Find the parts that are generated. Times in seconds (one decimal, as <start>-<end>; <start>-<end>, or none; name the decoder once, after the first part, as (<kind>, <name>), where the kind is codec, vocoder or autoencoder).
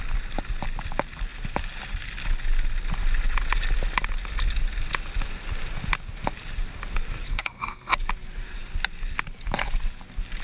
7.3-7.9 (codec, SNAC)